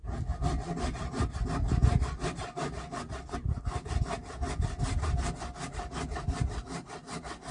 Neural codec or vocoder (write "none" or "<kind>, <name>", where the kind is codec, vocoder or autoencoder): none